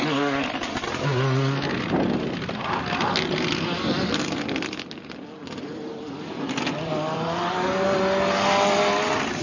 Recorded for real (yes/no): yes